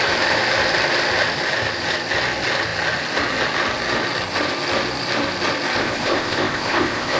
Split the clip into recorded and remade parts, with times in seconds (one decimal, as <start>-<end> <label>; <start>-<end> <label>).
0.0-5.8 recorded; 5.8-7.2 remade